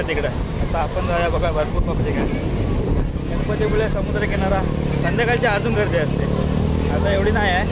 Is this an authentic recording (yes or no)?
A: yes